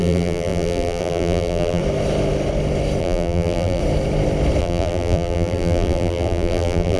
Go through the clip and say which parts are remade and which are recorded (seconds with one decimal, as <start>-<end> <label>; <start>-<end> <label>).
0.0-1.8 remade; 1.8-3.0 recorded; 3.0-3.8 remade; 3.8-4.6 recorded; 4.6-7.0 remade

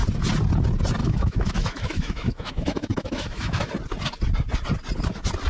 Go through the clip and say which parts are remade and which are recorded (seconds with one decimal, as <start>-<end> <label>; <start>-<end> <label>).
0.0-1.0 recorded; 1.0-3.7 remade; 3.7-5.5 recorded

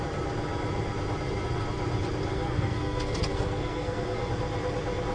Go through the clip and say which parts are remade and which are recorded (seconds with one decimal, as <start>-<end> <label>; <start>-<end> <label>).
0.0-2.3 recorded; 2.3-4.3 remade; 4.3-5.1 recorded

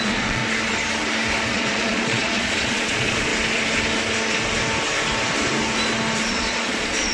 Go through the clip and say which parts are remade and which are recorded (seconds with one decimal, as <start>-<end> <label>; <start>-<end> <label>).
0.0-0.4 remade; 0.4-1.5 recorded; 1.5-3.3 remade; 3.3-6.3 recorded; 6.3-7.1 remade